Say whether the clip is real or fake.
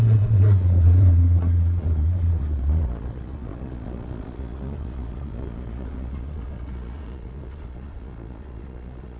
fake